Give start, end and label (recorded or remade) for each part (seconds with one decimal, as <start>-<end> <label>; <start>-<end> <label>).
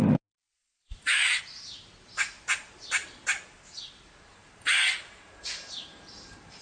0.0-0.6 recorded; 0.6-1.4 remade; 1.4-4.3 recorded; 4.3-6.6 remade